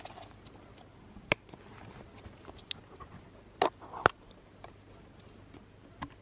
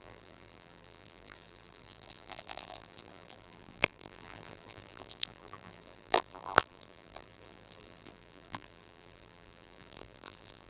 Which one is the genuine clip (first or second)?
first